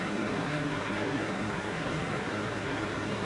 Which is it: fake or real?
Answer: fake